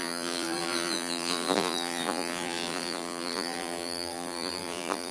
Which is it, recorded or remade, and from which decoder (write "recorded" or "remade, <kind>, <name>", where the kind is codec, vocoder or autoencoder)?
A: remade, vocoder, BigVGAN v2